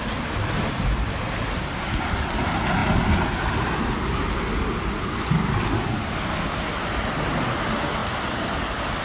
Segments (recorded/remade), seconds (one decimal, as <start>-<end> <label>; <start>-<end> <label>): 0.0-9.0 recorded